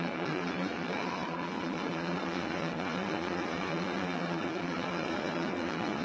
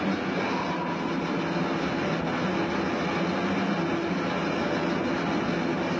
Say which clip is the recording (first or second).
second